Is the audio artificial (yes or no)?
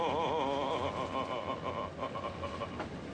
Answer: no